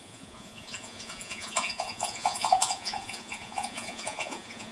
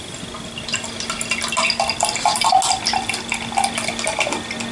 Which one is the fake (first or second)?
first